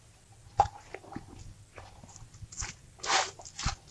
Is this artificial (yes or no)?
no